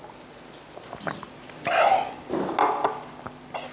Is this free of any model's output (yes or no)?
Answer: yes